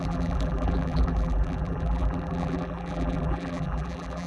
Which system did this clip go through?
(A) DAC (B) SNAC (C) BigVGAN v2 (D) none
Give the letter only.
C